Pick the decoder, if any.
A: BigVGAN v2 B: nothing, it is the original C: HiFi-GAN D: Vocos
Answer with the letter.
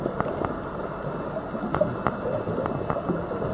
B